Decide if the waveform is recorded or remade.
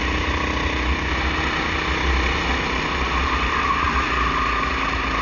recorded